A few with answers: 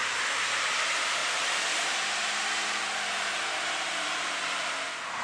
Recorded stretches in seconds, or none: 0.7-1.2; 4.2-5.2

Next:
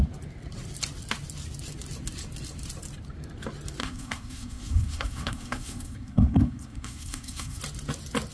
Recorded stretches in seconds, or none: 0.0-3.8; 7.6-8.3